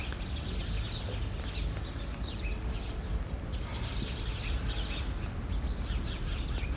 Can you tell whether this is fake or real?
real